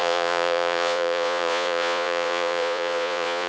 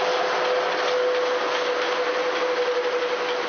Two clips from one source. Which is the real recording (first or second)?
second